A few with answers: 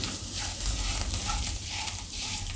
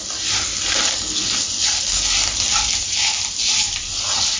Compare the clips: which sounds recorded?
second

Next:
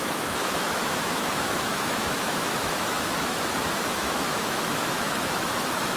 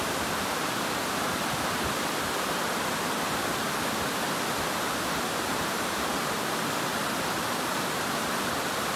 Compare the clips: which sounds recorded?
second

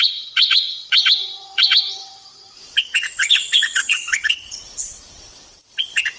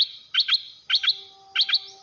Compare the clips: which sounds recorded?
second